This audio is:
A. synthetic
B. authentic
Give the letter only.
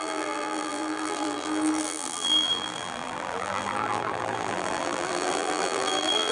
A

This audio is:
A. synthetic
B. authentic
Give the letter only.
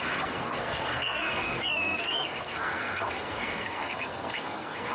A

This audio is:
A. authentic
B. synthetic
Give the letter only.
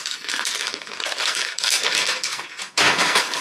B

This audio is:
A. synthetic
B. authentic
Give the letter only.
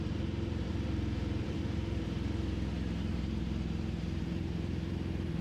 A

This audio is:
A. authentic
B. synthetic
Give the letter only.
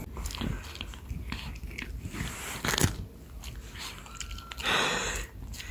A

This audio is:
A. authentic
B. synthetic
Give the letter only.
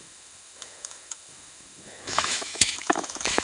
B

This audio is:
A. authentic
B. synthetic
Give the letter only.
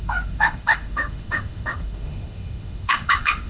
B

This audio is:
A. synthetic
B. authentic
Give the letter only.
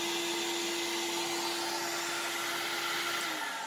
B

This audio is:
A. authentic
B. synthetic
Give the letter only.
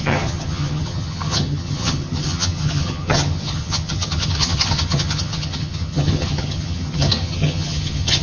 B